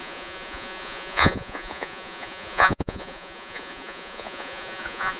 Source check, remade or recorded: remade